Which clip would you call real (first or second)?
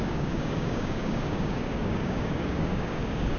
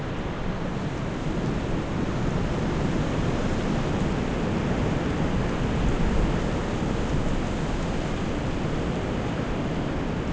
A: second